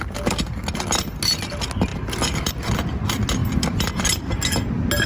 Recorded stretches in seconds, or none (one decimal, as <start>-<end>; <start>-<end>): 0.0-5.1